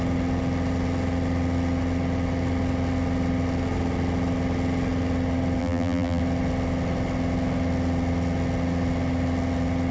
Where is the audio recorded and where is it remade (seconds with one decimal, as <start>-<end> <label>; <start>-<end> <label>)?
0.0-5.6 recorded; 5.6-6.2 remade; 6.2-9.9 recorded

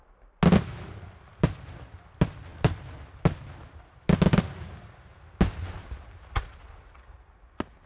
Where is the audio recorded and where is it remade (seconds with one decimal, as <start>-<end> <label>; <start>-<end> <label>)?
0.0-7.9 recorded

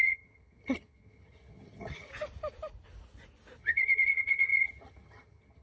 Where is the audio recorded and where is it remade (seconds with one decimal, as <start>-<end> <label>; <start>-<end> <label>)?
0.0-2.1 remade; 2.1-3.6 recorded; 3.6-5.6 remade

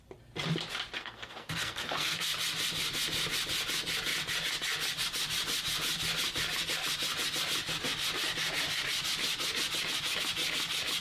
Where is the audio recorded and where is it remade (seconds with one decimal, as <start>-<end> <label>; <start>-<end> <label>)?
0.0-1.0 recorded; 1.0-2.3 remade; 2.3-11.0 recorded